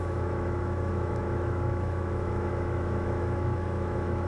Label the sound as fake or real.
fake